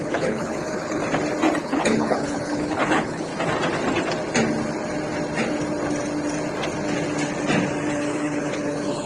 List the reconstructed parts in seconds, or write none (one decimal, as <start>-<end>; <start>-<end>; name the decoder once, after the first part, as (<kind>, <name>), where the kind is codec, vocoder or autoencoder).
0.0-1.0 (codec, HILCodec); 1.6-3.3; 7.9-9.1